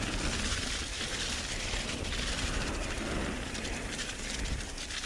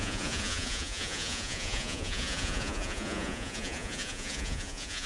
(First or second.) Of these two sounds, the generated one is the second